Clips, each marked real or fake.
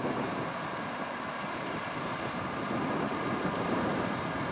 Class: fake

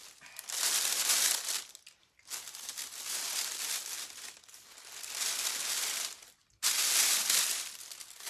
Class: real